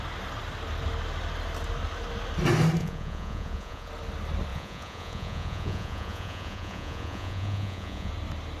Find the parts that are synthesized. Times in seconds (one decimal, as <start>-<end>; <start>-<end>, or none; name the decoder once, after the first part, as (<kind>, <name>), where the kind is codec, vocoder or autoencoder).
2.8-3.9 (vocoder, Vocos); 4.5-8.1